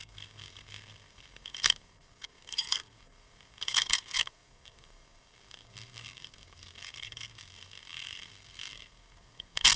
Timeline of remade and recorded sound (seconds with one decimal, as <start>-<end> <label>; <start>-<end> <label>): 0.0-9.8 remade